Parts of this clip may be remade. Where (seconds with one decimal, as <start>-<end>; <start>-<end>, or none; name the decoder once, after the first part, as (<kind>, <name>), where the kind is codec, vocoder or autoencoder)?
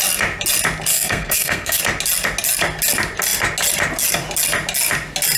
0.9-1.8 (codec, SNAC)